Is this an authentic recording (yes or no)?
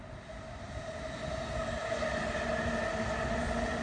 yes